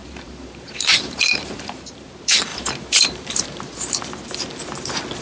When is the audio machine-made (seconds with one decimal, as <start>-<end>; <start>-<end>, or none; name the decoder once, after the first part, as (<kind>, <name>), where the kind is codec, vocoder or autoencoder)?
0.0-2.1 (vocoder, BigVGAN v2); 2.5-4.0